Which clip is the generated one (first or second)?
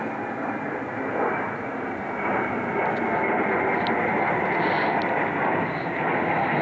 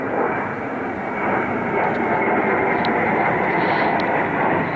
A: second